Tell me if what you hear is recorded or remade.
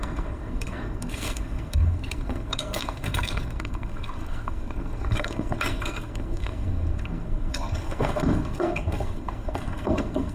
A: remade